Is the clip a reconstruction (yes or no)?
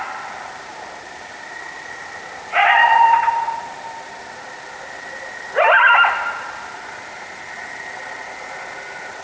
no